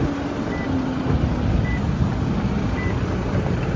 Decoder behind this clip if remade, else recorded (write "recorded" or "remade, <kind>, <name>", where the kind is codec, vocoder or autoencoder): recorded